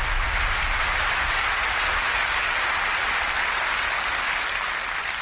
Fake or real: real